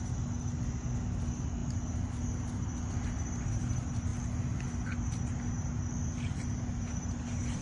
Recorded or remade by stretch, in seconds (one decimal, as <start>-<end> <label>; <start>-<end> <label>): 0.0-7.6 recorded